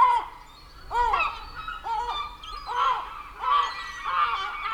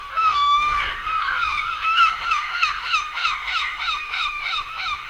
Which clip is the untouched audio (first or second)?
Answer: first